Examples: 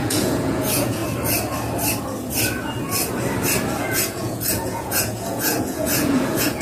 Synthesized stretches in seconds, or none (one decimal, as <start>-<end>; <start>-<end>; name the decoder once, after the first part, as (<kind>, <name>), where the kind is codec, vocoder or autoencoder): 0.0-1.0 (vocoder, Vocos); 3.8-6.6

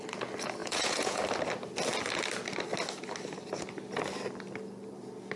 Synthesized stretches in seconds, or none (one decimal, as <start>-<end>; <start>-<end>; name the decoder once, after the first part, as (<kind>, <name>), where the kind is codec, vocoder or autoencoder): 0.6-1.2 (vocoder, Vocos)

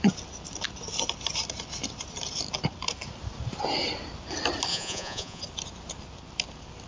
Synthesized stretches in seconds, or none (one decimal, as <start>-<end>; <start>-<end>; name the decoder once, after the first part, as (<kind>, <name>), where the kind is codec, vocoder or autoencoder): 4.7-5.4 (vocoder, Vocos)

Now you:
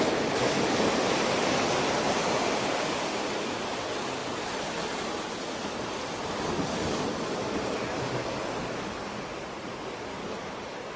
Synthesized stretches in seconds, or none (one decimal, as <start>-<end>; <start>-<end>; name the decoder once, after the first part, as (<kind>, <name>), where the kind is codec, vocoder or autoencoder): 9.3-9.9 (vocoder, Vocos)

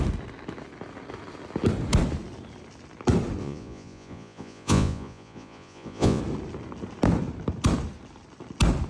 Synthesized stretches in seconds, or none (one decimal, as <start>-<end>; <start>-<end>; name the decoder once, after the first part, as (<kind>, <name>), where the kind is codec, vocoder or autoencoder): 3.4-6.2 (vocoder, Vocos)

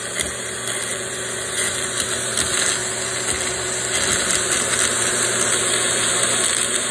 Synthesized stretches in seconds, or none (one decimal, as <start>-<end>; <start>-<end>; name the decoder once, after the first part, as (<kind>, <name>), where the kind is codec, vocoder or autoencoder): 0.9-2.0 (vocoder, Vocos)

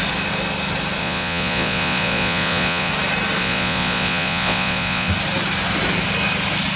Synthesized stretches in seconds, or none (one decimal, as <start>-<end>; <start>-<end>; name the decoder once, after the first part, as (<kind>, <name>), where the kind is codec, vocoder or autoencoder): 1.0-2.9 (vocoder, Vocos); 3.4-5.1

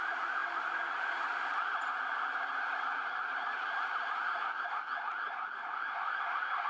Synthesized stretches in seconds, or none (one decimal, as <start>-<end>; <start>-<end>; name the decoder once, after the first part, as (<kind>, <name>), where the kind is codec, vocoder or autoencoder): none